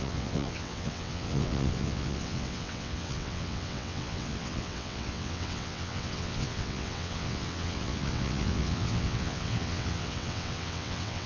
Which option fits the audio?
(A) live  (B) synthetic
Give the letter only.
B